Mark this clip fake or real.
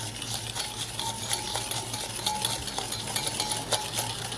real